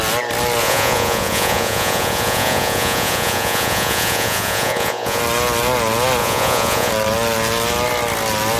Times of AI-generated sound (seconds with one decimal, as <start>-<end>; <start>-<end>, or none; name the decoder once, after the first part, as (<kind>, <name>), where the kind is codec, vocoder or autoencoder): 0.6-5.2 (vocoder, Vocos); 6.2-6.9